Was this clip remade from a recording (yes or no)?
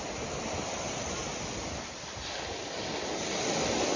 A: no